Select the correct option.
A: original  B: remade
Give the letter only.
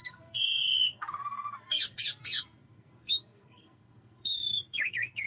B